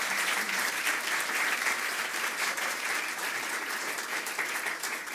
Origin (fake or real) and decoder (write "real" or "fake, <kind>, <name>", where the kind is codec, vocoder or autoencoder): fake, vocoder, BigVGAN v2